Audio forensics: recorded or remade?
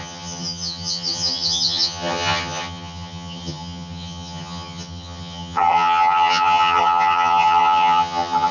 remade